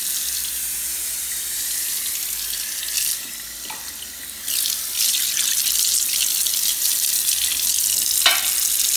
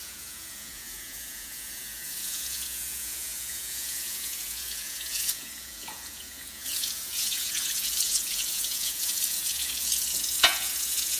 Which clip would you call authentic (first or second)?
first